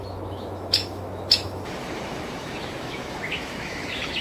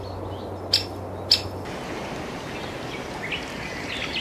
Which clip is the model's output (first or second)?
first